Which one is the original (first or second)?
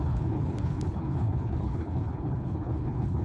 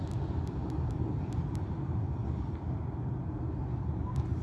second